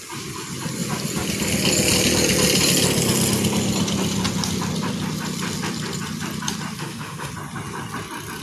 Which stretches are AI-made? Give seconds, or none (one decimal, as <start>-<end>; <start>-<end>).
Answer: 6.8-7.3

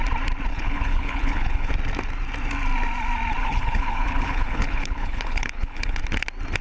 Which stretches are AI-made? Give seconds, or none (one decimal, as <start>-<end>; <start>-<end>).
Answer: 0.5-1.7; 3.4-6.0

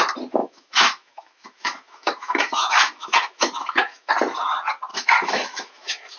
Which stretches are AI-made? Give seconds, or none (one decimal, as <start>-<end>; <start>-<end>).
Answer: 0.4-4.1; 4.9-6.2

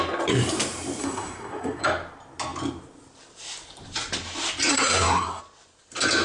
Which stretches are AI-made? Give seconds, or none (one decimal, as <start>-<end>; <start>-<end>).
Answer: 1.0-1.8; 4.7-5.4

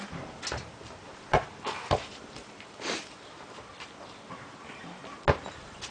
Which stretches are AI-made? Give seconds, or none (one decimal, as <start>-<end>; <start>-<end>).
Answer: 0.0-3.7; 4.3-5.0; 5.5-5.9

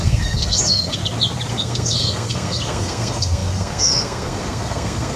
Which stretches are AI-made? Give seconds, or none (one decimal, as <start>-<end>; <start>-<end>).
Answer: 0.0-1.0; 1.5-5.2

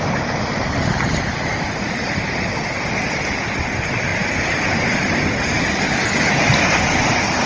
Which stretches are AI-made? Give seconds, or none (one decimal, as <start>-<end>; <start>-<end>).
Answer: none

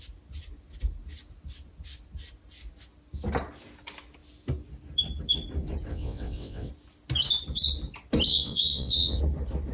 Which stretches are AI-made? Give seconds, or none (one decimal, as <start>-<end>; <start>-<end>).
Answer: 5.9-6.7; 8.3-9.2